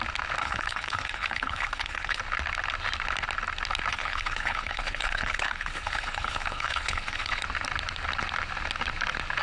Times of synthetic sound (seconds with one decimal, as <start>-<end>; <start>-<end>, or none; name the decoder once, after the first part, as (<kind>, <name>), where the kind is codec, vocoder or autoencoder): 0.4-2.2 (codec, HILCodec); 3.9-7.4